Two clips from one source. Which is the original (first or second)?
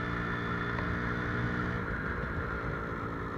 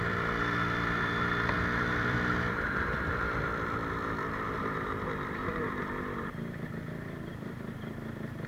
first